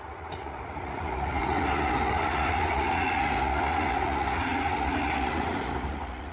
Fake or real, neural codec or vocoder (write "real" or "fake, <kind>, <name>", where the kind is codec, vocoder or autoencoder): fake, vocoder, Vocos